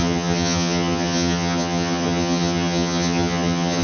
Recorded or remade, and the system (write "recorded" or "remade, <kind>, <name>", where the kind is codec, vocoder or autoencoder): remade, vocoder, HiFi-GAN